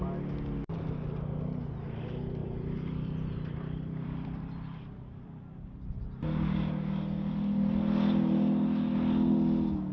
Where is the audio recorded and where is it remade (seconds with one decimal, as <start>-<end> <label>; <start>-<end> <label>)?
0.0-2.4 recorded; 2.4-5.7 remade; 5.7-9.9 recorded